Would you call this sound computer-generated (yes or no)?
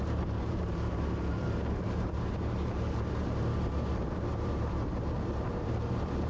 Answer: yes